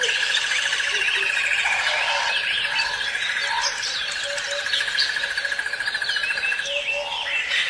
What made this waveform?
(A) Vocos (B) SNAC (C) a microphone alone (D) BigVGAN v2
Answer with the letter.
C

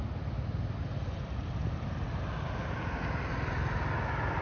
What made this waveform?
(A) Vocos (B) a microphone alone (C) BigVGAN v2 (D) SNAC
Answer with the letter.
B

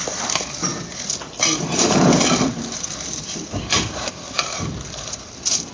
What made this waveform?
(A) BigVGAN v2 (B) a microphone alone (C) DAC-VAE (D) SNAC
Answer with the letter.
A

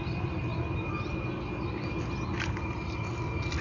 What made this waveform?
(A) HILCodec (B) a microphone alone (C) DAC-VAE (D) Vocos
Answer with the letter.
B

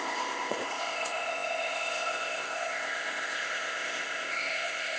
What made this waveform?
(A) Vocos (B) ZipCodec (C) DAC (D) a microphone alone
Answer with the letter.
B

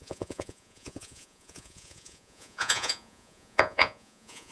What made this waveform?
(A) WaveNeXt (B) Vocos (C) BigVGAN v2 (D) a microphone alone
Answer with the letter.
B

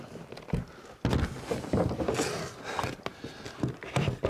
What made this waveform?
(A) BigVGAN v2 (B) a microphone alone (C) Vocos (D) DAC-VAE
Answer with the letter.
B